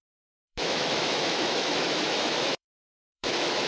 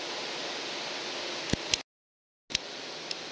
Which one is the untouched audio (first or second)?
second